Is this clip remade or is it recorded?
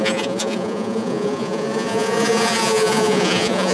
remade